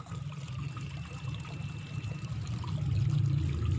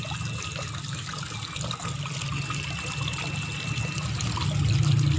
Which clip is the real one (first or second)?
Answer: second